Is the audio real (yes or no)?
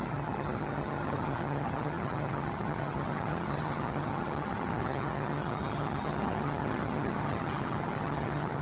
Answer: no